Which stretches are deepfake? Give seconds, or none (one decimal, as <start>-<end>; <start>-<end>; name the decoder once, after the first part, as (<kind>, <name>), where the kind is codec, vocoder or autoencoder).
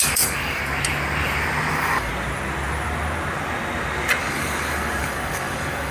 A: 0.0-0.6 (codec, DAC); 1.7-2.1; 4.2-5.9